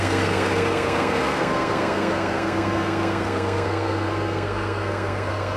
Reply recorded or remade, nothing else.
remade